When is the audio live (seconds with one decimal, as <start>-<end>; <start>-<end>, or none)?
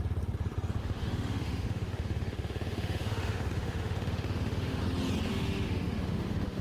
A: 0.0-0.8; 4.8-5.3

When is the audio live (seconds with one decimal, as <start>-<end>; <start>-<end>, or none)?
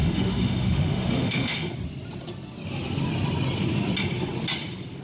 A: 1.7-5.0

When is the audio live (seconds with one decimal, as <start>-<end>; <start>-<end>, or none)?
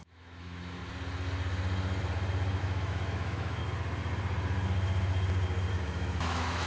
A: 0.8-2.6; 3.6-5.7